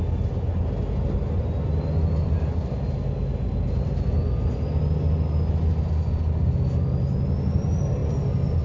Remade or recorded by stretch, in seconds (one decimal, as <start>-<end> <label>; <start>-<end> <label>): 0.0-8.6 recorded

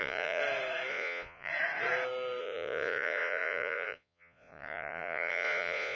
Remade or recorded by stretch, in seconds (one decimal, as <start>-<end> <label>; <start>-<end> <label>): 0.0-0.4 remade; 0.4-0.9 recorded; 0.9-1.5 remade; 1.5-2.4 recorded; 2.4-6.0 remade

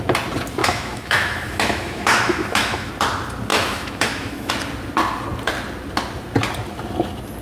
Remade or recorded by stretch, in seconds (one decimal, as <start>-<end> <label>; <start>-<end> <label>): 0.0-0.6 recorded; 0.6-2.9 remade; 2.9-3.5 recorded; 3.5-4.5 remade; 4.5-7.4 recorded

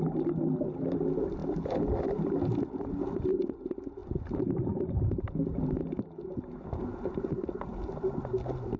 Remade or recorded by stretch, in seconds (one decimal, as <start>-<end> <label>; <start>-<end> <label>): 0.0-8.8 recorded